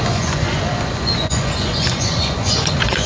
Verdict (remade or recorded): remade